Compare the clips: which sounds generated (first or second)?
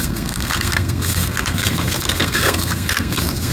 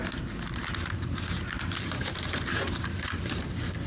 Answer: first